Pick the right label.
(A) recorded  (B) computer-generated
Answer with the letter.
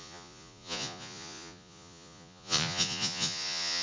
B